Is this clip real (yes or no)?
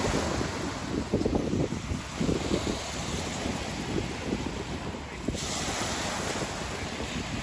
yes